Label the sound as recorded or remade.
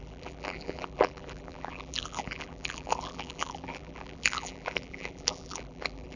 remade